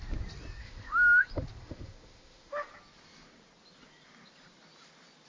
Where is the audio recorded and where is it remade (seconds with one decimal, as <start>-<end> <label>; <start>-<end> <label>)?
0.0-0.6 recorded; 0.6-1.2 remade; 1.2-1.6 recorded; 1.6-2.7 remade; 2.7-5.3 recorded